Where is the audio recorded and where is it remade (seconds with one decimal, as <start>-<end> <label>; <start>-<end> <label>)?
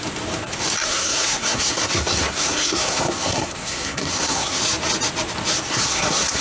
0.0-0.8 recorded; 0.8-4.6 remade; 4.6-5.7 recorded; 5.7-6.4 remade